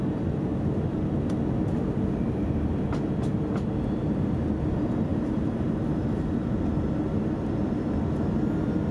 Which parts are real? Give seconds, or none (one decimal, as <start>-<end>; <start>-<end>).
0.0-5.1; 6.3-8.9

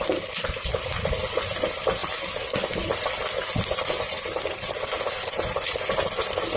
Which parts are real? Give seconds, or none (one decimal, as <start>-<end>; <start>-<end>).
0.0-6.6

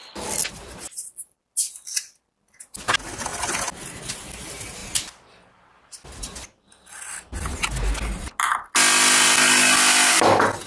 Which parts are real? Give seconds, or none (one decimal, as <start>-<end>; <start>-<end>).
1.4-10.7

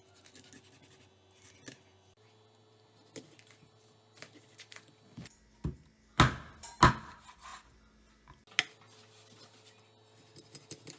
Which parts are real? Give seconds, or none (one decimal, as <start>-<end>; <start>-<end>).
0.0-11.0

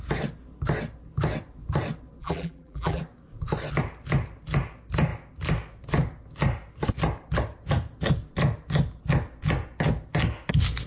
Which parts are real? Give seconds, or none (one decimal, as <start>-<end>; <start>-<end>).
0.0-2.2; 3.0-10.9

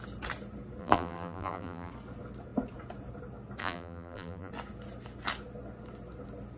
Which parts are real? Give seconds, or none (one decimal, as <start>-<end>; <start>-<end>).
0.0-0.8; 1.9-3.6; 4.5-6.6